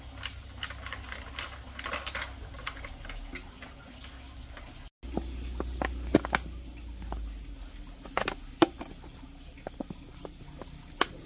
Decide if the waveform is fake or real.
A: real